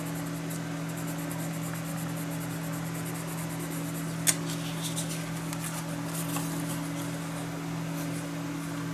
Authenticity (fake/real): real